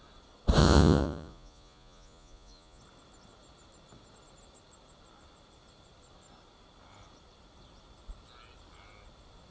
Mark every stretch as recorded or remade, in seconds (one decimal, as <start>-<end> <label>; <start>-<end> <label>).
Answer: 0.0-0.6 recorded; 0.6-2.8 remade; 2.8-9.5 recorded